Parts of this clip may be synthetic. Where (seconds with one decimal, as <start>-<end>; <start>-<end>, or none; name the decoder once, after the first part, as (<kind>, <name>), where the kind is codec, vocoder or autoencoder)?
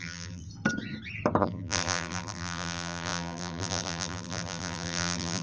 0.0-0.4 (vocoder, BigVGAN v2); 1.4-5.4